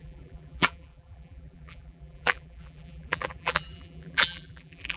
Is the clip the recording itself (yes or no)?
no